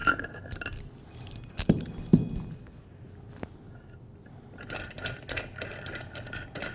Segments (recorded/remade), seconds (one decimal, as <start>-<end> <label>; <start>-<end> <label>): 0.0-6.7 recorded